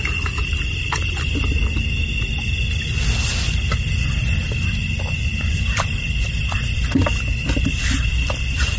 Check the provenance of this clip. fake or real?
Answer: real